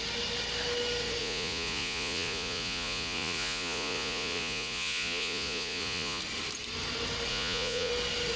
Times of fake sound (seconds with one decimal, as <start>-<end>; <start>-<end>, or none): 1.2-6.2; 7.3-7.9